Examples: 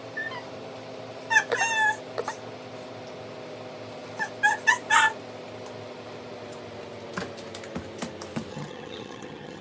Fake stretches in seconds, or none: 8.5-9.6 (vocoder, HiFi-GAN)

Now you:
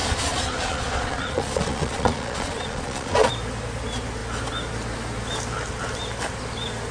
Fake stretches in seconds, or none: 0.0-3.3 (vocoder, Vocos)

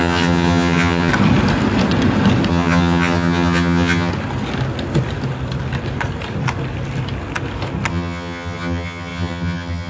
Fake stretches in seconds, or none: 0.0-1.1 (vocoder, HiFi-GAN); 2.5-4.1; 7.9-9.9

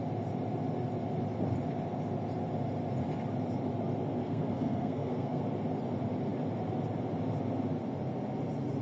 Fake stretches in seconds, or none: 4.1-5.4 (codec, SNAC)